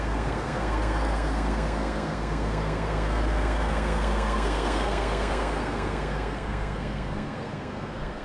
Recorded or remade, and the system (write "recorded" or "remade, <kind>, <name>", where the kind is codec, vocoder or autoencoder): remade, codec, SNAC